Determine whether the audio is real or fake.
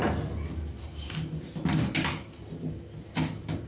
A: real